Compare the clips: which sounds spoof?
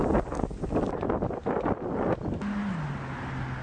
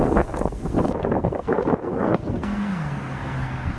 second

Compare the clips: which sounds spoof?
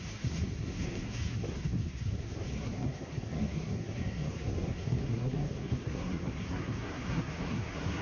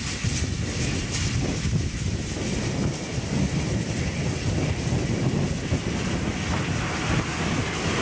first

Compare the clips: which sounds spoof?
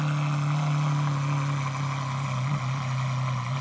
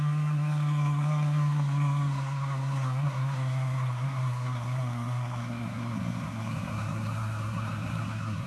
second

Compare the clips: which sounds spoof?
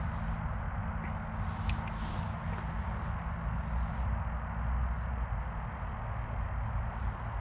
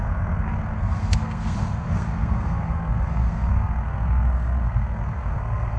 second